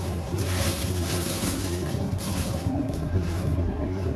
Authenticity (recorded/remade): remade